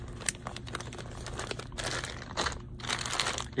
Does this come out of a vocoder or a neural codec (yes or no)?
no